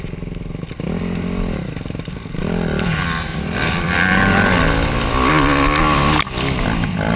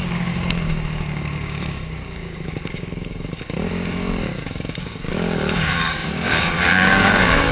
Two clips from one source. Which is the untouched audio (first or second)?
first